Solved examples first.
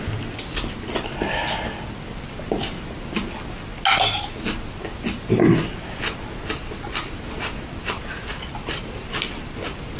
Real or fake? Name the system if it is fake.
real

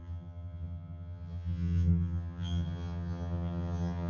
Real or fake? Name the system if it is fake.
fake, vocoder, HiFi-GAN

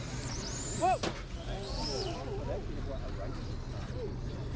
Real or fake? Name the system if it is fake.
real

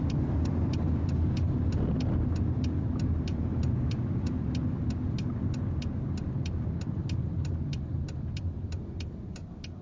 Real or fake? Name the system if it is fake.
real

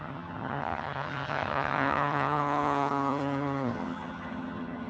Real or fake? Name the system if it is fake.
fake, vocoder, HiFi-GAN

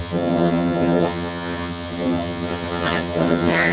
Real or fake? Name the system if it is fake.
fake, vocoder, HiFi-GAN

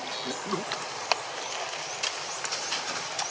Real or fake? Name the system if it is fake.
real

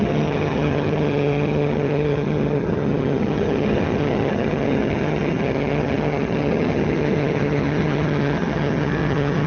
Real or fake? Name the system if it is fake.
fake, vocoder, HiFi-GAN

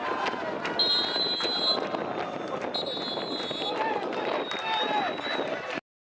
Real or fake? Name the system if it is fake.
real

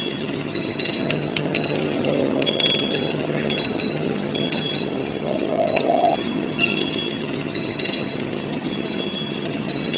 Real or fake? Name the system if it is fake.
fake, vocoder, HiFi-GAN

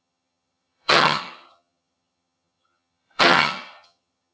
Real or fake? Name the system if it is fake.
fake, vocoder, HiFi-GAN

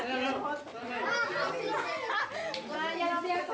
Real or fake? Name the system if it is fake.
real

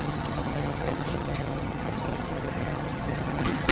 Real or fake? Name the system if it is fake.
fake, vocoder, HiFi-GAN